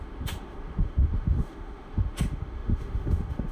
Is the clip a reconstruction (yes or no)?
yes